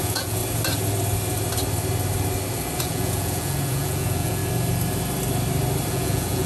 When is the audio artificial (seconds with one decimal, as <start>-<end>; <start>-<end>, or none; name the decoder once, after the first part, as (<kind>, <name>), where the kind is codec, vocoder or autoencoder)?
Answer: 0.0-0.4 (vocoder, Vocos); 2.8-4.4; 5.9-6.5

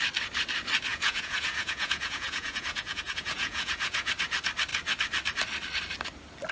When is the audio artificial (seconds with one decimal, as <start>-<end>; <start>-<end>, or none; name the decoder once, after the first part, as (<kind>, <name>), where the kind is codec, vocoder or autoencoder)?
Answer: 0.9-4.1 (vocoder, Vocos)

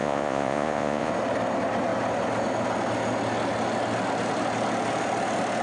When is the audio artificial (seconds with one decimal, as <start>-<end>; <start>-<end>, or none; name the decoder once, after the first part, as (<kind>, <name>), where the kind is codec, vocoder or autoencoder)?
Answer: 0.0-1.1 (vocoder, Vocos)

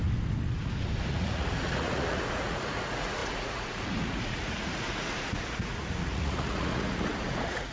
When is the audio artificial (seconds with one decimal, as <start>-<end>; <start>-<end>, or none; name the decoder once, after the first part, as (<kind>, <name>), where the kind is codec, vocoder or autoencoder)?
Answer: 1.1-7.7 (vocoder, Vocos)